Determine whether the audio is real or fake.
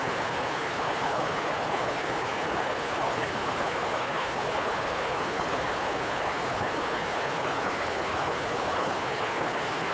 fake